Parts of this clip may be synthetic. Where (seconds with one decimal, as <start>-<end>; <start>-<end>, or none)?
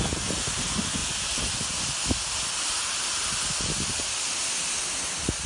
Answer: none